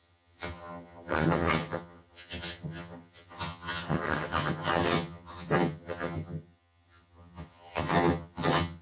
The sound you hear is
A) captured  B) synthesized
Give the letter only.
B